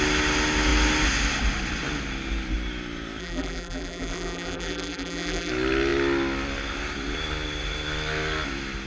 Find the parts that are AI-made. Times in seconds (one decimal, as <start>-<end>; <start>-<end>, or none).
3.2-5.5